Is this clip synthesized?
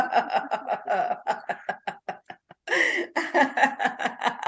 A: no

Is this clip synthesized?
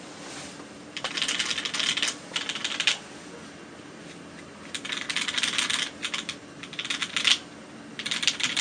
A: no